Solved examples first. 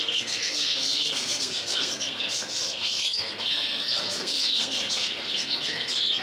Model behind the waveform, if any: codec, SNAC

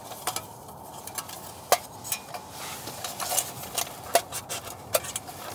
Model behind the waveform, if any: none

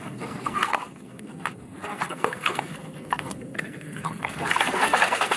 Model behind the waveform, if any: codec, SNAC